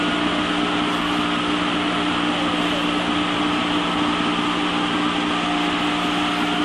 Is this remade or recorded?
recorded